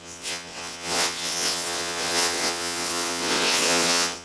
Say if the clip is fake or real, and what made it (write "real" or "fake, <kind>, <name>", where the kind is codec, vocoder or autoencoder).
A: fake, vocoder, WaveNeXt